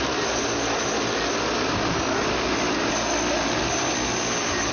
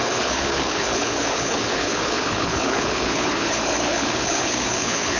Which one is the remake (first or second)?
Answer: second